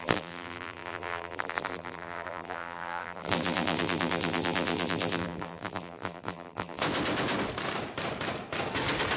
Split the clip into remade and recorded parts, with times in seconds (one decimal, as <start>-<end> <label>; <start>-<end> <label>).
0.0-6.8 remade; 6.8-9.2 recorded

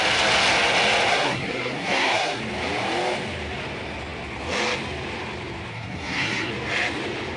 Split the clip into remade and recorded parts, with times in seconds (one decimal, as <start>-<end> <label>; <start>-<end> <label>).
0.0-1.1 recorded; 1.1-2.4 remade; 2.4-5.7 recorded; 5.7-6.5 remade; 6.5-7.4 recorded

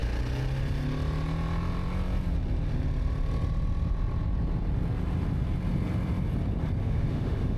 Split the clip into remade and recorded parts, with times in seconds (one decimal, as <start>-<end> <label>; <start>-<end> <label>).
0.0-6.8 recorded; 6.8-7.6 remade

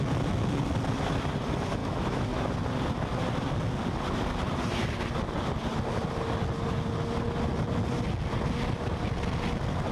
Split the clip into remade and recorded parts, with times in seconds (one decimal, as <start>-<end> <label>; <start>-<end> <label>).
0.0-1.8 recorded; 1.8-2.3 remade; 2.3-9.9 recorded

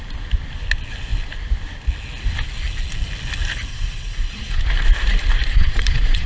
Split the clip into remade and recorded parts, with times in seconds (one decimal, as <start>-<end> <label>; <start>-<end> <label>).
0.0-3.7 recorded; 3.7-4.6 remade; 4.6-5.6 recorded; 5.6-6.3 remade

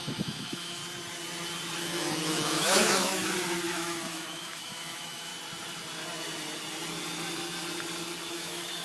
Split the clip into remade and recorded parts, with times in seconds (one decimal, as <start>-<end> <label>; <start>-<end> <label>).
0.0-0.8 remade; 0.8-1.8 recorded; 1.8-3.2 remade; 3.2-3.7 recorded; 3.7-5.3 remade; 5.3-8.3 recorded; 8.3-8.8 remade

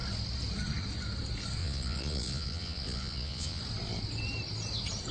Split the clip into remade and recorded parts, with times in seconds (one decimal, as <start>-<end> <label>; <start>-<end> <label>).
0.0-1.6 recorded; 1.6-3.6 remade; 3.6-5.1 recorded

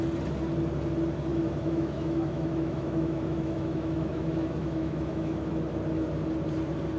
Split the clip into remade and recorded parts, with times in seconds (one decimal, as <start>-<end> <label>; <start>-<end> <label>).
0.0-1.3 recorded; 1.3-5.5 remade; 5.5-7.0 recorded